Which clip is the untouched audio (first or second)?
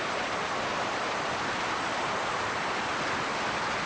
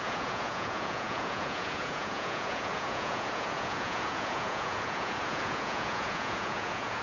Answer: first